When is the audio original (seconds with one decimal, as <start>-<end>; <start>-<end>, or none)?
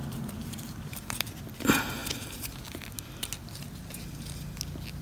1.3-5.0